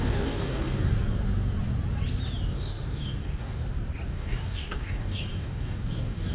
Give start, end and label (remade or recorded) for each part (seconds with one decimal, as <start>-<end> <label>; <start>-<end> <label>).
0.0-0.9 remade; 0.9-2.5 recorded; 2.5-3.6 remade; 3.6-4.1 recorded; 4.1-6.3 remade